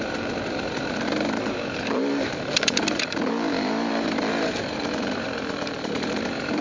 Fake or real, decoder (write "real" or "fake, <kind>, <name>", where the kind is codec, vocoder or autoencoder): fake, vocoder, BigVGAN v2